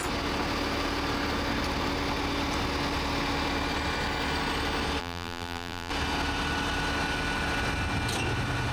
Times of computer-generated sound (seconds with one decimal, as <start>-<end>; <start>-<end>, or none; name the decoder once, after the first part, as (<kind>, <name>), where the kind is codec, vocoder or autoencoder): 5.0-5.9 (vocoder, BigVGAN v2)